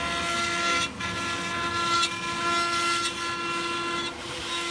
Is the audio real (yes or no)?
yes